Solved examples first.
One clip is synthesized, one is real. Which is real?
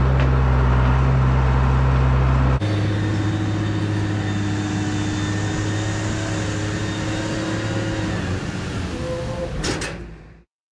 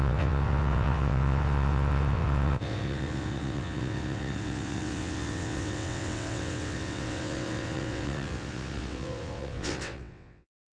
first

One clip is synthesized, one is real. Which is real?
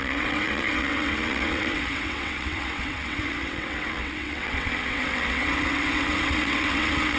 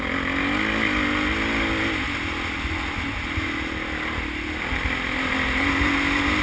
second